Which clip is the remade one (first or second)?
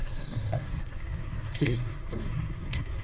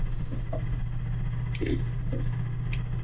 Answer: first